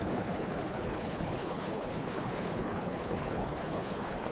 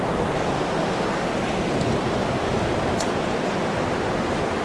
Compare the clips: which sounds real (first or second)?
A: second